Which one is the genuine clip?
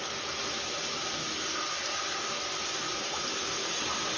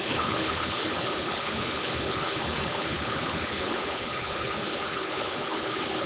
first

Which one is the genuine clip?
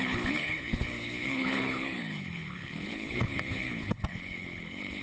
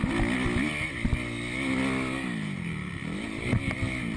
second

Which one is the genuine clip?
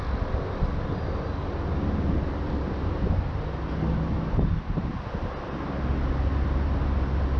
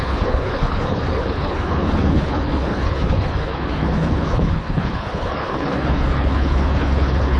first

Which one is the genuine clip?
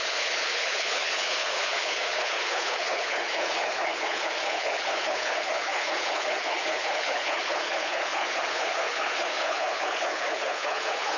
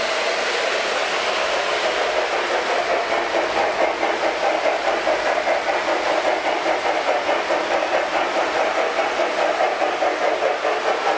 second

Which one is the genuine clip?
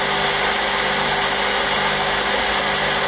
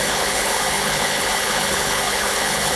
first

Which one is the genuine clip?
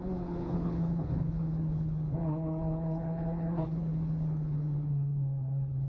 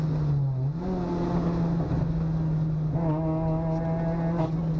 second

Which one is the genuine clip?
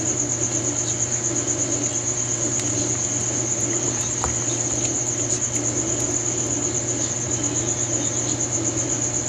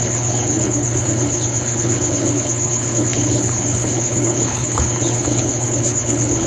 first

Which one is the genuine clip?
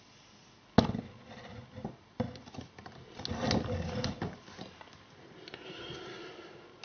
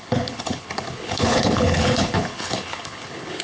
first